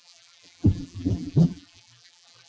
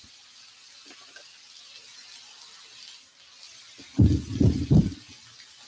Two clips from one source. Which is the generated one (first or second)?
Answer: first